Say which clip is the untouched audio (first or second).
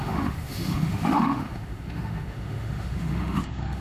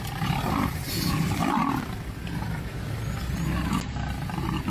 second